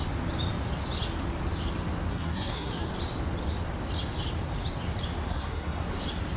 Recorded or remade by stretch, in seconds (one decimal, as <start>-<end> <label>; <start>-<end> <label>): 0.0-2.1 recorded; 2.1-2.9 remade; 2.9-5.3 recorded; 5.3-5.9 remade; 5.9-6.4 recorded